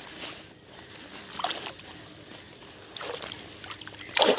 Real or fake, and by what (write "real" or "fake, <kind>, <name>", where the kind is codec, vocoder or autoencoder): real